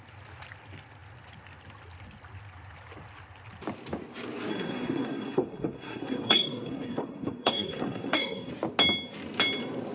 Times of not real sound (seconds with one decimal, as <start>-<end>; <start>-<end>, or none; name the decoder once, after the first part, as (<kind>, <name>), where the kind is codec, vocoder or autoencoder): 4.5-8.5 (codec, SNAC)